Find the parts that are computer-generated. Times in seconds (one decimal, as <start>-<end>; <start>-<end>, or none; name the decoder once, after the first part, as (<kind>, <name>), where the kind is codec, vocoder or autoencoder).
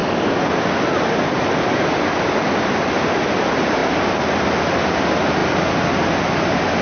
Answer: none